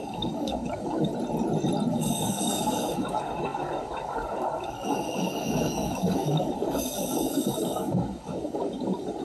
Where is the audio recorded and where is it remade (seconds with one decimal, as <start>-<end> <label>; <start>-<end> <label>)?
0.0-1.1 remade; 1.1-1.9 recorded; 1.9-9.2 remade